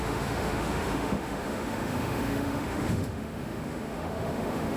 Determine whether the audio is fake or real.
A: fake